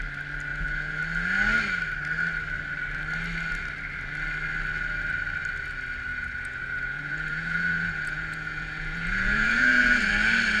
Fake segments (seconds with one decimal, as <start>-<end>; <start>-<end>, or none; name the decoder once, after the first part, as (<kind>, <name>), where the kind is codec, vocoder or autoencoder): 0.5-1.0 (vocoder, Vocos); 6.1-10.1